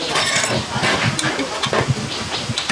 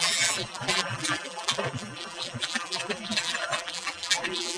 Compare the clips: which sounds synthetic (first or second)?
second